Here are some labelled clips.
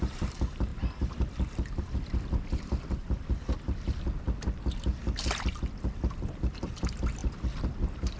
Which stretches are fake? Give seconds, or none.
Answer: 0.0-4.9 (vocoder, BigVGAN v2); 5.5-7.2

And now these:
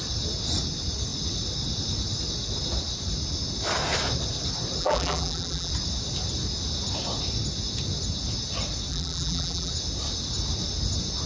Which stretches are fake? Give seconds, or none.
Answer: 4.8-5.7 (vocoder, BigVGAN v2); 8.9-9.7

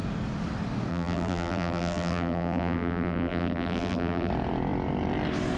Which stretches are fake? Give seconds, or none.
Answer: 0.9-4.3 (vocoder, BigVGAN v2)